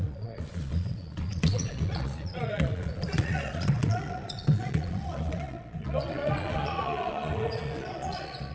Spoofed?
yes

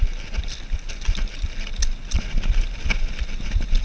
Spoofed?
no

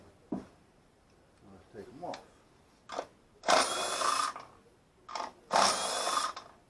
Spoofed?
no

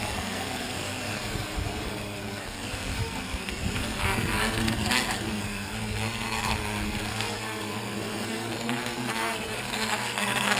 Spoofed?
yes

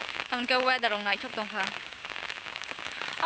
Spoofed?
yes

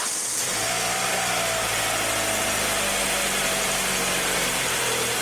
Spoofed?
no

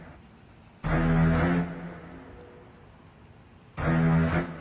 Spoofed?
no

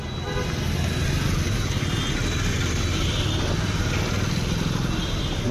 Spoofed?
no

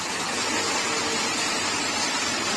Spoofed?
no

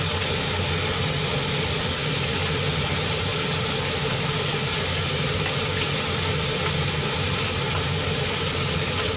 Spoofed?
no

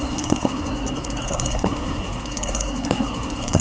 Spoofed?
yes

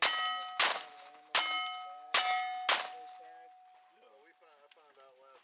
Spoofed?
no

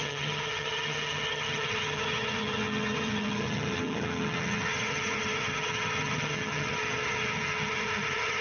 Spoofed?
yes